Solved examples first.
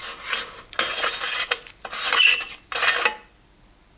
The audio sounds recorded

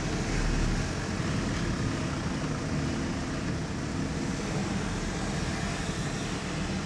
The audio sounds recorded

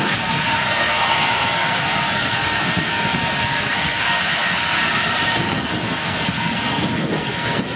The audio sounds remade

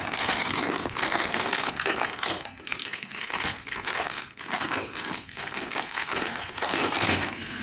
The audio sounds remade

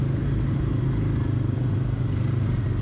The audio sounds recorded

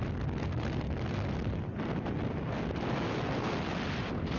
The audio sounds recorded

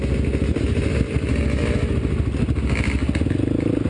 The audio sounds recorded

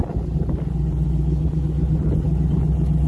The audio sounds recorded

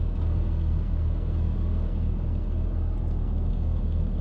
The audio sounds remade